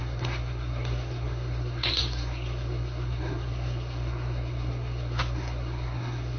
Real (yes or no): no